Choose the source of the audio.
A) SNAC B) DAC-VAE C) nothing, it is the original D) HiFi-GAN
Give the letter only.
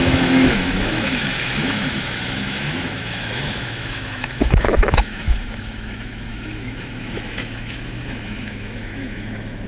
B